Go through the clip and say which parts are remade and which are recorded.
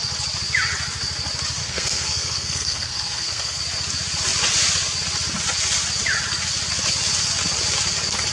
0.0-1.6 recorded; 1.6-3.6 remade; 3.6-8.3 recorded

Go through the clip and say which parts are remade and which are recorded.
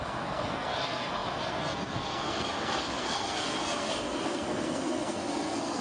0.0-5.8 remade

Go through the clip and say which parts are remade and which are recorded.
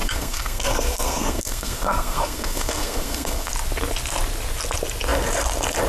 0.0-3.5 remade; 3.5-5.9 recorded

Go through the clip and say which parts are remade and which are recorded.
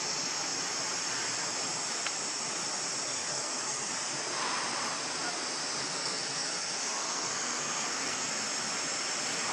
0.0-3.3 recorded; 3.3-3.9 remade; 3.9-5.8 recorded; 5.8-8.3 remade; 8.3-9.5 recorded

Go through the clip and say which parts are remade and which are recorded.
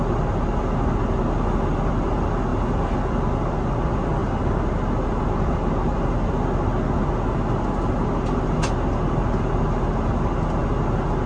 0.0-11.3 recorded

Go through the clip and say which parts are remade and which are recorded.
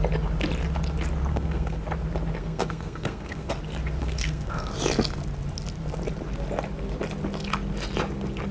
0.0-1.3 recorded; 1.3-1.8 remade; 1.8-2.4 recorded; 2.4-3.5 remade; 3.5-4.0 recorded; 4.0-4.7 remade; 4.7-8.5 recorded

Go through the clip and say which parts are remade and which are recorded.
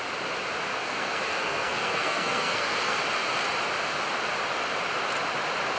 0.0-0.7 recorded; 0.7-3.0 remade; 3.0-5.8 recorded